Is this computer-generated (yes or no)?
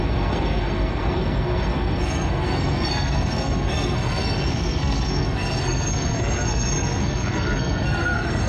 yes